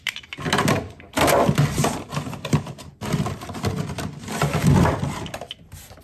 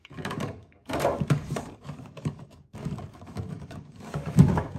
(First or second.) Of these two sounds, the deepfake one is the second